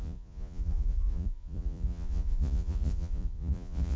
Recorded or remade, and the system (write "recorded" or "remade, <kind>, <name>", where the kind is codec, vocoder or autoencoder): remade, vocoder, Vocos